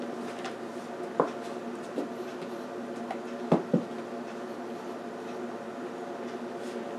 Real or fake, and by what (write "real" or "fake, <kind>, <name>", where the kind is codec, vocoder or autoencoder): real